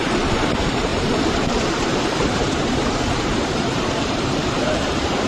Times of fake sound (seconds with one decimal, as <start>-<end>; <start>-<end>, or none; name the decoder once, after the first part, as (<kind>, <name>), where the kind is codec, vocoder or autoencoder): 0.0-5.3 (vocoder, BigVGAN v2)